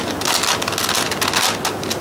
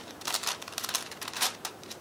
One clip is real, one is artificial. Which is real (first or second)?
first